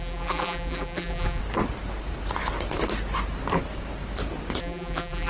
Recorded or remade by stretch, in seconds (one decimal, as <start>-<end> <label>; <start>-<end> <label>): 0.0-1.4 remade; 1.4-4.6 recorded; 4.6-5.3 remade